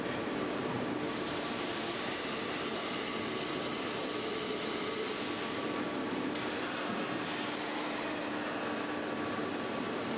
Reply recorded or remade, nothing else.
recorded